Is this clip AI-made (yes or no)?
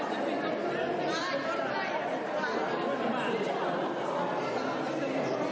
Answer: no